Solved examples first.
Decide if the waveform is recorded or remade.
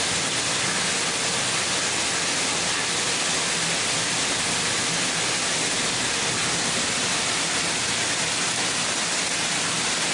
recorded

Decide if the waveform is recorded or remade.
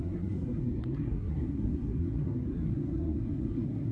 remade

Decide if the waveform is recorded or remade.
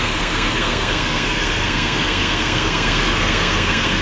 remade